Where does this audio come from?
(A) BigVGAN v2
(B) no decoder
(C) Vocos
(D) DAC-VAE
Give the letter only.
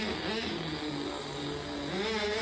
B